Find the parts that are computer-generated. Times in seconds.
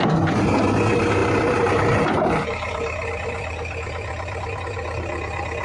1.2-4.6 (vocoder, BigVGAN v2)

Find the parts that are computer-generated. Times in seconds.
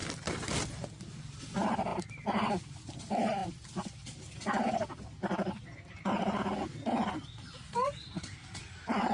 0.0-3.4 (vocoder, BigVGAN v2); 7.1-9.1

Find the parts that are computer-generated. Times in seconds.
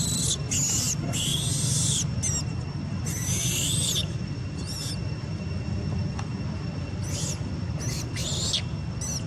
4.0-4.9 (vocoder, BigVGAN v2)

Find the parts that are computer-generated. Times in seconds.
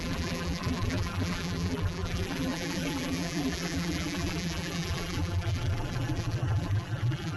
0.0-7.4 (vocoder, BigVGAN v2)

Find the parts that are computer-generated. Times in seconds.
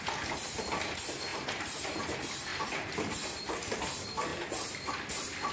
1.3-2.0 (vocoder, BigVGAN v2); 2.5-3.5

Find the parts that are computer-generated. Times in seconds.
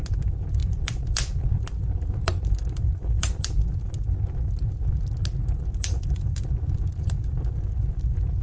0.6-3.9 (vocoder, BigVGAN v2); 5.8-7.6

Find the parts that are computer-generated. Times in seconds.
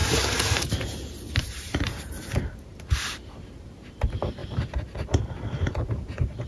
0.0-4.4 (vocoder, BigVGAN v2); 5.2-6.5